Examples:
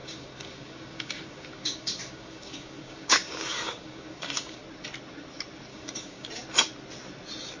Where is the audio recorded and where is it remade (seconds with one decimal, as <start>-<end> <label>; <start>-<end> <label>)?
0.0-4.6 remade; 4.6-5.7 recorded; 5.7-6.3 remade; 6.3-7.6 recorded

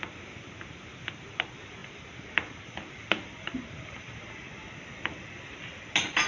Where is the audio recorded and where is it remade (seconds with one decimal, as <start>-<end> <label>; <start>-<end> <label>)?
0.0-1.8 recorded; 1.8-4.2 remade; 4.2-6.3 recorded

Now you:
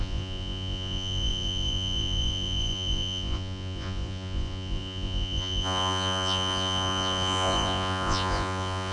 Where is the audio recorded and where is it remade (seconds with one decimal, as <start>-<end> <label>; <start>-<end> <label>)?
0.0-8.9 remade

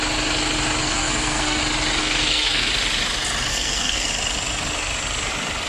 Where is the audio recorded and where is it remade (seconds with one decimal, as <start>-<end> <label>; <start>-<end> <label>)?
0.0-0.8 recorded; 0.8-1.6 remade; 1.6-2.0 recorded; 2.0-2.7 remade; 2.7-3.5 recorded; 3.5-4.1 remade; 4.1-5.7 recorded

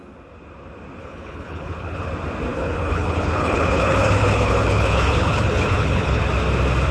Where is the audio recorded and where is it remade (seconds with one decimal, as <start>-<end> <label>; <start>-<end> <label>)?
0.0-1.0 recorded; 1.0-2.1 remade; 2.1-2.5 recorded; 2.5-6.2 remade; 6.2-6.9 recorded

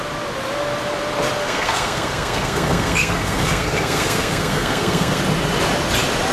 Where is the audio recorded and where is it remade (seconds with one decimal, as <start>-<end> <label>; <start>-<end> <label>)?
0.0-1.4 recorded; 1.4-5.2 remade; 5.2-6.3 recorded

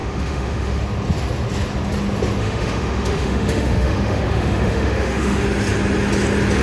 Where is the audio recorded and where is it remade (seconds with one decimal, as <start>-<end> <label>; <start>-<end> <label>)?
0.0-0.8 remade; 0.8-2.4 recorded; 2.4-5.4 remade; 5.4-6.6 recorded

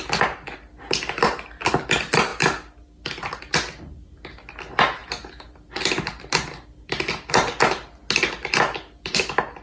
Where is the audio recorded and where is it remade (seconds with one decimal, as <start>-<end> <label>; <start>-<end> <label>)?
0.0-9.6 recorded